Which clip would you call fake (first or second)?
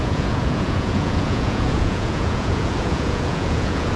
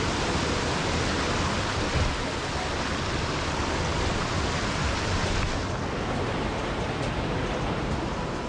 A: first